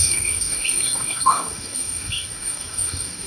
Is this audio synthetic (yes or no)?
yes